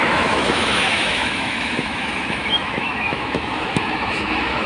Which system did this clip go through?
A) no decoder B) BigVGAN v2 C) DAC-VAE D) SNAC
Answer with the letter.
C